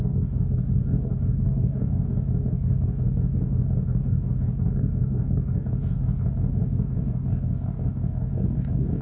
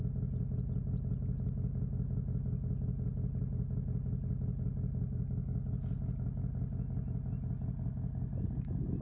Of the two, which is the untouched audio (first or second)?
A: second